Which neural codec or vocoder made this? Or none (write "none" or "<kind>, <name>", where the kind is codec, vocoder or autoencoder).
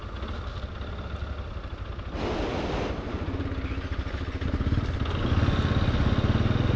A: none